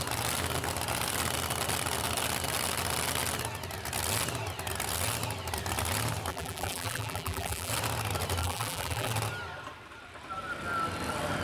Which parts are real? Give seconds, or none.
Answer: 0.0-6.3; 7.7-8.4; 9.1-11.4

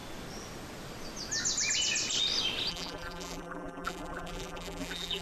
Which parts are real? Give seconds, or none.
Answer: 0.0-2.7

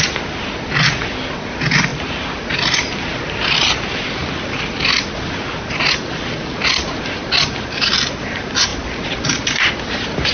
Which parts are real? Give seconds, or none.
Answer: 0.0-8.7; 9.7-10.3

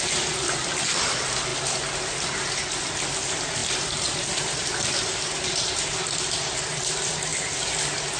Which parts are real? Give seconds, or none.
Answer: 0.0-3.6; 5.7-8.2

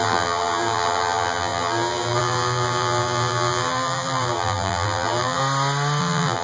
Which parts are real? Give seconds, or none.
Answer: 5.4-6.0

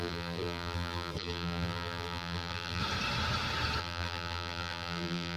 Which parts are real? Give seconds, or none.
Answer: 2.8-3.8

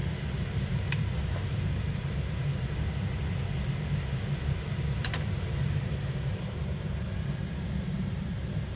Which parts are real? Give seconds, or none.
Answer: 0.0-0.7; 2.5-4.8

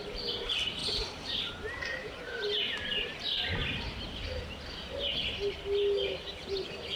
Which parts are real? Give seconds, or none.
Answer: 0.0-0.8; 1.5-2.0; 3.2-3.6; 4.4-7.0